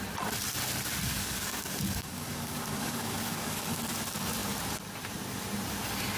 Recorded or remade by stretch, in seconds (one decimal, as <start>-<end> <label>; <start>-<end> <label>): 0.0-1.1 recorded; 1.1-3.8 remade; 3.8-6.2 recorded